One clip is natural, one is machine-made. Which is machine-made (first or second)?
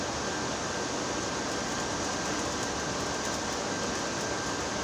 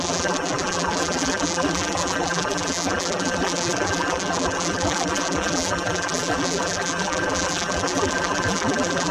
second